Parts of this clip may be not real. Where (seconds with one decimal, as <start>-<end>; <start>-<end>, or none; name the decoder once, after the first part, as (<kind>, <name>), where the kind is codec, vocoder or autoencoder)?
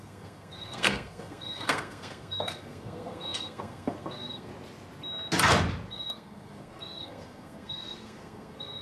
0.0-4.5 (codec, SNAC); 5.9-8.8